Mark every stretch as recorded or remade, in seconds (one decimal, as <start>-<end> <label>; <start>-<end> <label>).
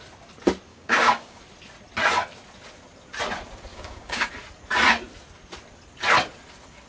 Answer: 0.0-0.7 recorded; 0.7-1.4 remade; 1.4-3.7 recorded; 3.7-4.3 remade; 4.3-6.9 recorded